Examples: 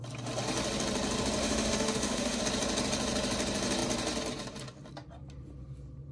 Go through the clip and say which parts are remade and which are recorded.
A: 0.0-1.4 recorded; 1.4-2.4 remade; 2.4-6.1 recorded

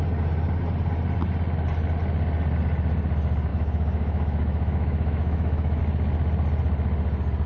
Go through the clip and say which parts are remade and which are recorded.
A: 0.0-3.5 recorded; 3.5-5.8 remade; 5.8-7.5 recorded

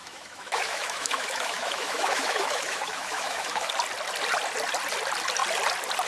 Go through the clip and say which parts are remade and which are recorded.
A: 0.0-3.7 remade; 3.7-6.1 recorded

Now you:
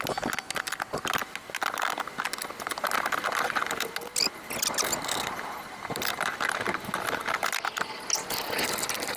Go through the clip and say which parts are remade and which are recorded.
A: 0.0-9.2 recorded

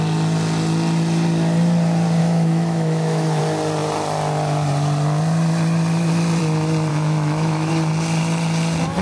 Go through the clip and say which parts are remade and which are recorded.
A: 0.0-2.2 recorded; 2.2-3.4 remade; 3.4-6.9 recorded; 6.9-7.7 remade; 7.7-9.0 recorded

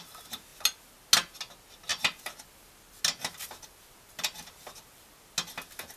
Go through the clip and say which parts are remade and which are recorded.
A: 0.0-6.0 recorded

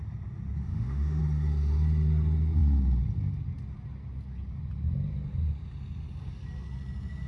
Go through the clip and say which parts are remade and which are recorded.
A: 0.0-0.7 recorded; 0.7-1.2 remade; 1.2-7.3 recorded